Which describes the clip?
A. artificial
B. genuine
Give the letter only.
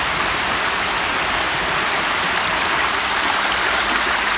B